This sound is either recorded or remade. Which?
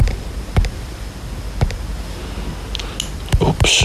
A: recorded